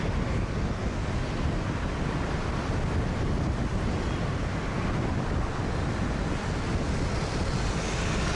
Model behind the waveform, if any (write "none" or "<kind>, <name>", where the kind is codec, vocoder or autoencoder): none